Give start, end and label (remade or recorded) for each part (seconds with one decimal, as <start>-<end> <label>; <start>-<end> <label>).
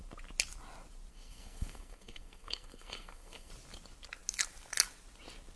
0.0-1.1 recorded; 1.1-3.5 remade; 3.5-5.6 recorded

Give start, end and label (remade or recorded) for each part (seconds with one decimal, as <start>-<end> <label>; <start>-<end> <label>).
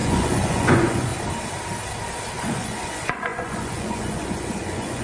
0.0-1.1 remade; 1.1-2.3 recorded; 2.3-5.0 remade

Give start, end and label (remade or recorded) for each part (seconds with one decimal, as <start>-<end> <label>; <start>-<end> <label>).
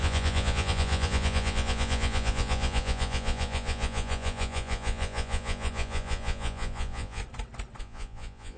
0.0-7.2 remade; 7.2-7.8 recorded; 7.8-8.6 remade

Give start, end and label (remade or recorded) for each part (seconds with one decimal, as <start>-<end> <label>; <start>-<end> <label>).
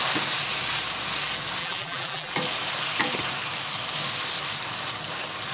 0.0-1.6 recorded; 1.6-2.3 remade; 2.3-5.5 recorded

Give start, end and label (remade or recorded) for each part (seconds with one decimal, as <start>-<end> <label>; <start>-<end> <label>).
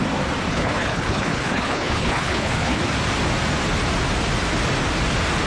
0.0-0.5 recorded; 0.5-2.8 remade; 2.8-5.5 recorded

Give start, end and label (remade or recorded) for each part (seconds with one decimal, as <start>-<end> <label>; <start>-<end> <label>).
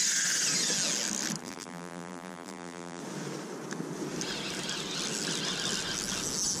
0.0-1.4 recorded; 1.4-3.0 remade; 3.0-6.6 recorded